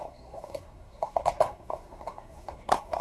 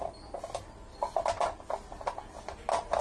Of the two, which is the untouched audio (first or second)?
second